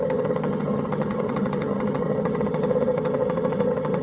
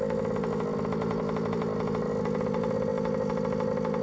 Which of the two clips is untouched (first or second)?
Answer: second